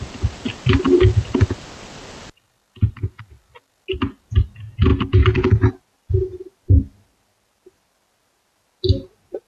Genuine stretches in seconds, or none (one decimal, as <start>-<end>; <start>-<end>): 0.0-9.5

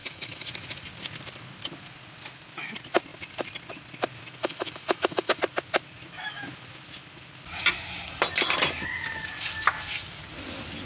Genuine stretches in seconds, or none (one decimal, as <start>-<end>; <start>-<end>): 0.5-4.4; 5.4-10.8

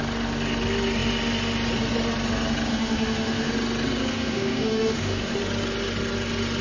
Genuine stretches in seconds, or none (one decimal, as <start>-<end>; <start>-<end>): 0.0-2.7; 3.5-4.1; 5.4-6.6